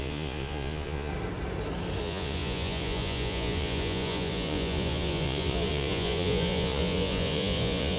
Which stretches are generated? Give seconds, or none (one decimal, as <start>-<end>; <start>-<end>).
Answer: 0.0-1.1; 2.0-8.0